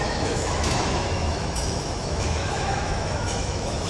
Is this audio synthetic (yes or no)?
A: yes